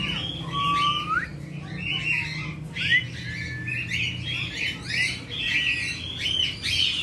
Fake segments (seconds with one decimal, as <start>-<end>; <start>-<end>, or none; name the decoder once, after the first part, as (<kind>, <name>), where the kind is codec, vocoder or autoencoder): none